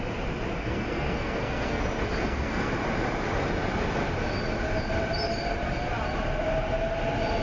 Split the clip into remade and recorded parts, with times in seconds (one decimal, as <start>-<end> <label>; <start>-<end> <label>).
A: 0.0-0.6 recorded; 0.6-1.8 remade; 1.8-2.2 recorded; 2.2-2.7 remade; 2.7-7.4 recorded